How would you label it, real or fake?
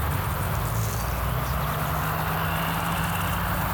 real